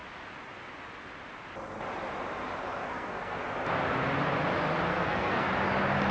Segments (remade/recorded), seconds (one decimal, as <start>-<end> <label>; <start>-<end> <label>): 0.0-2.6 recorded; 2.6-3.4 remade; 3.4-4.9 recorded; 4.9-5.5 remade; 5.5-6.1 recorded